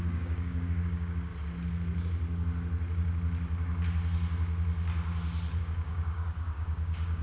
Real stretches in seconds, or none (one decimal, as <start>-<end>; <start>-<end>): 1.3-5.6